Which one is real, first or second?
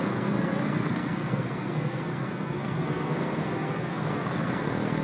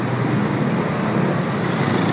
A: second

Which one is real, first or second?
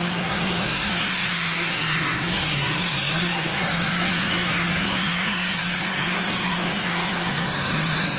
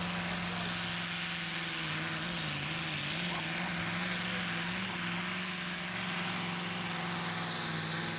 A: second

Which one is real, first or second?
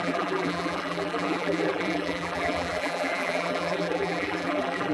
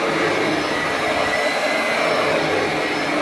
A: second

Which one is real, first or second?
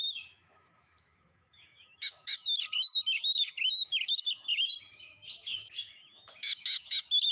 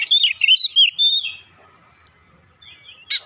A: second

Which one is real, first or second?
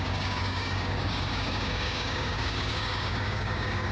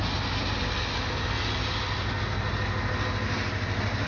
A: second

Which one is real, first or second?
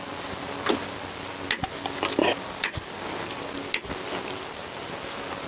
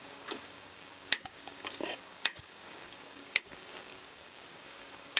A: first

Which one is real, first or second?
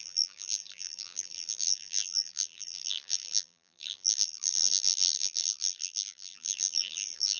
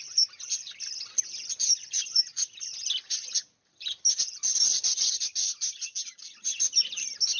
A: second